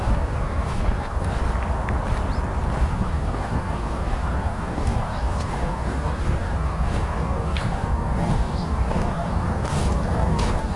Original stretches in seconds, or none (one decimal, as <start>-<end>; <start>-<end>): 1.4-2.8